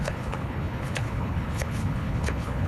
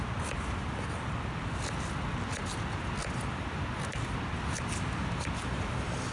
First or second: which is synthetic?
first